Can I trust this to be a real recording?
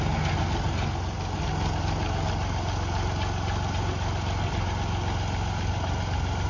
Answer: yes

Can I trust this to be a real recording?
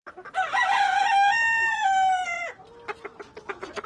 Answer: yes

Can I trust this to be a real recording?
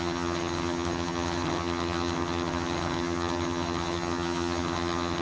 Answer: no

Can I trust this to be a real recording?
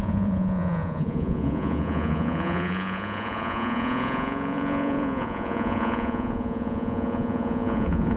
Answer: no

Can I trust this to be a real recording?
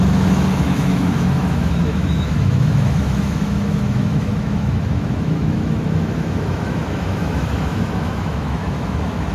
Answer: no